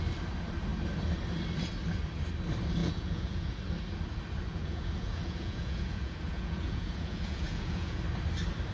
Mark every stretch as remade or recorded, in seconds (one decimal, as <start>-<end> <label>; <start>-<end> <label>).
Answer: 0.0-2.8 recorded; 2.8-3.6 remade; 3.6-4.5 recorded; 4.5-8.0 remade; 8.0-8.7 recorded